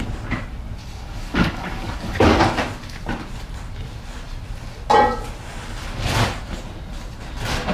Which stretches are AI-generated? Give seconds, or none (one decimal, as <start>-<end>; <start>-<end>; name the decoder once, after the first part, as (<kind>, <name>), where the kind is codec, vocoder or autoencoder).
0.8-2.4 (codec, DAC)